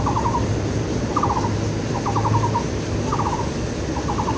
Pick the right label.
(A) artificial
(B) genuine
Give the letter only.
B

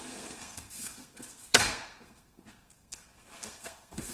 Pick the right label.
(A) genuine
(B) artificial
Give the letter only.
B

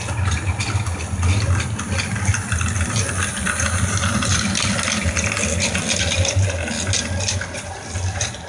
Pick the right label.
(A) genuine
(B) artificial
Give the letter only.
A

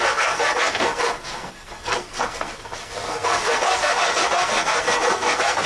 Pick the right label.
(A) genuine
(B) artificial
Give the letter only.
B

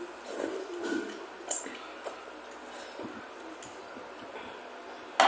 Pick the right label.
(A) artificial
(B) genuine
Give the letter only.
B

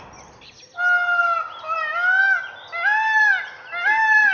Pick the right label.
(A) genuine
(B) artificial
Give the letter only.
A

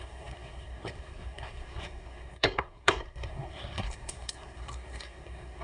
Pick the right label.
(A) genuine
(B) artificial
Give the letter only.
B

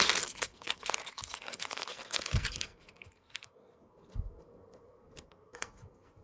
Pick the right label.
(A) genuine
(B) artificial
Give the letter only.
B